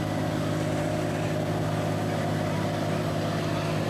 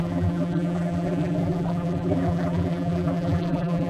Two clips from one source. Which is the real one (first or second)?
first